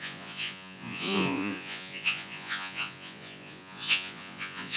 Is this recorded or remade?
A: remade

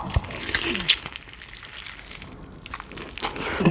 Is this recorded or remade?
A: recorded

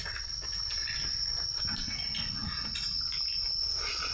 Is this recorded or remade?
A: recorded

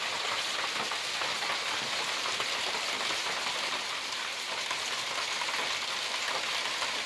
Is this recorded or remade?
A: recorded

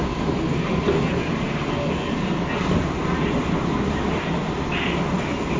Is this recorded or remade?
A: recorded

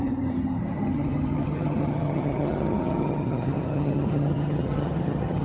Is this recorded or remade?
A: remade